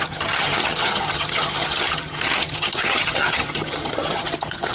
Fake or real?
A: fake